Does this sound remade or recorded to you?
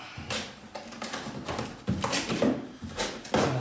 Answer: recorded